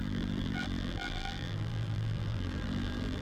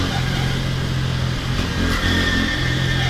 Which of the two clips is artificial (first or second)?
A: first